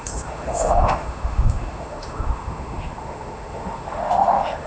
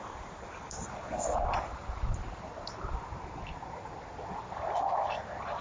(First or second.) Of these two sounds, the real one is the second